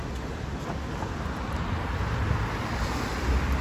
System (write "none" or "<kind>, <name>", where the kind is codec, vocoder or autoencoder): none